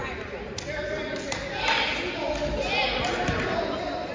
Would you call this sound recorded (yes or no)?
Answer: yes